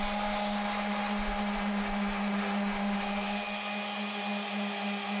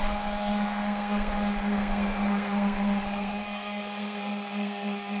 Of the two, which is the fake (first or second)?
second